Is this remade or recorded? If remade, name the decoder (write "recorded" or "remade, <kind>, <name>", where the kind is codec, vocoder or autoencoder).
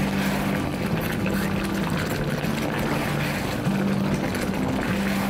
recorded